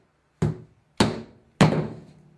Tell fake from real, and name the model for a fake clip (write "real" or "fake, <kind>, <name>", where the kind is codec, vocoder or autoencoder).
real